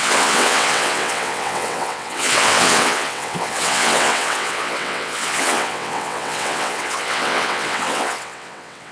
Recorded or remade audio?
remade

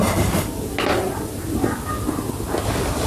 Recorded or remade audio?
recorded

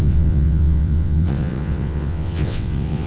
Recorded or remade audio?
remade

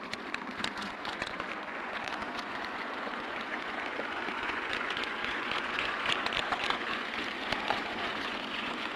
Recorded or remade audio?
remade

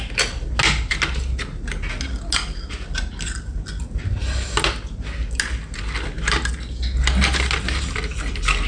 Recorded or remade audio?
recorded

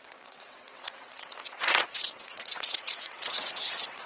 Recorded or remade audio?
remade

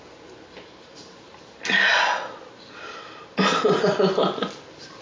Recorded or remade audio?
recorded